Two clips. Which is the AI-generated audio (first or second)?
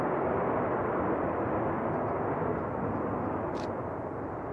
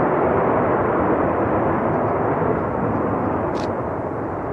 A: second